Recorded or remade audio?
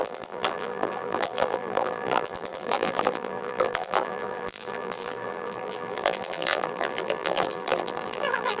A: remade